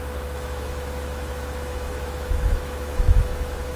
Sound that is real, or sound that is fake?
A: fake